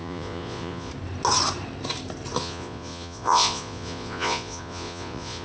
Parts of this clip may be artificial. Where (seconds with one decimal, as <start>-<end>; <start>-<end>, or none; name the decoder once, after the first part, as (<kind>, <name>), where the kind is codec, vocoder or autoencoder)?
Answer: 0.0-0.9 (vocoder, Vocos); 2.4-5.4